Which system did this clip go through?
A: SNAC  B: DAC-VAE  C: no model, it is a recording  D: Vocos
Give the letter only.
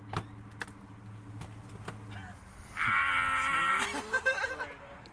C